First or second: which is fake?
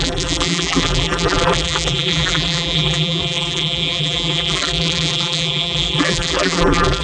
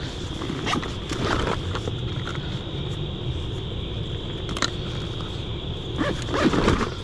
first